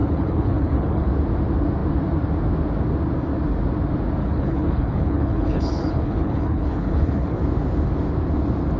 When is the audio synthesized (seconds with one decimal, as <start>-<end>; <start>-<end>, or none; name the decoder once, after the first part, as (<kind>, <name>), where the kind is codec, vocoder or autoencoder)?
0.0-1.1 (codec, HILCodec); 4.2-7.4